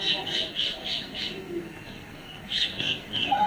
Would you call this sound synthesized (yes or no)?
yes